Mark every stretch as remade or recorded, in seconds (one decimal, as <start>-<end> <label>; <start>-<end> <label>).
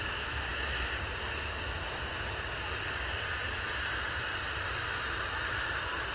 0.0-6.1 recorded